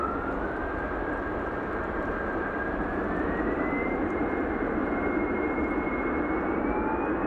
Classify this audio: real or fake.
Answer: real